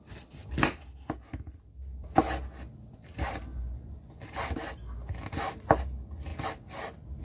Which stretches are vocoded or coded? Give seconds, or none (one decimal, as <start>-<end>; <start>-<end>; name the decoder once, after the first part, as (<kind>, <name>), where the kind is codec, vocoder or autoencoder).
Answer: 3.5-4.2 (vocoder, Vocos)